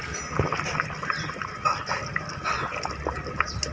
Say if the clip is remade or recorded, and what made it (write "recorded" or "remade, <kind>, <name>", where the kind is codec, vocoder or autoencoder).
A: recorded